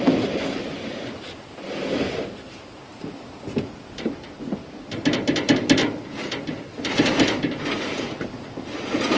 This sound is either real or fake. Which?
real